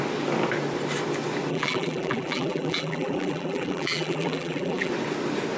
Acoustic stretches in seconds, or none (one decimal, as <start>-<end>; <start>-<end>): 0.0-1.5; 4.9-5.6